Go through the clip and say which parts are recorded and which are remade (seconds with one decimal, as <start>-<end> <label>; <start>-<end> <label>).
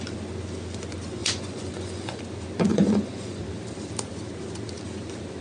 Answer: 0.0-1.2 recorded; 1.2-2.2 remade; 2.2-2.7 recorded; 2.7-3.4 remade; 3.4-5.4 recorded